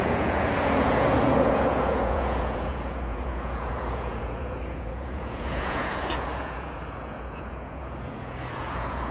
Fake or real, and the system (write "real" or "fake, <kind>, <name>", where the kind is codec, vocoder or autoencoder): fake, vocoder, Vocos